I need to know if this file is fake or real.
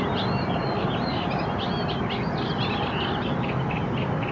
real